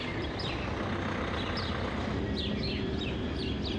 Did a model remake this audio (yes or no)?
no